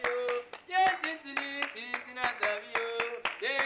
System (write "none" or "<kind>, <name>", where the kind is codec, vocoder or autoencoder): none